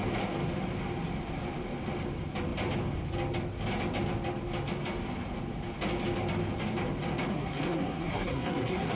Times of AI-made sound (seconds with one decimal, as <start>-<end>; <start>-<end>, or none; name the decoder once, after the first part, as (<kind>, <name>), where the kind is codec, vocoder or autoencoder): 7.3-9.0 (codec, SNAC)